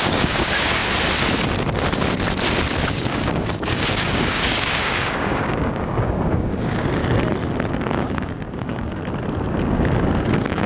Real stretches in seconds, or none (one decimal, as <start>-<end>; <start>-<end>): 0.8-2.9; 7.0-7.7; 9.0-9.6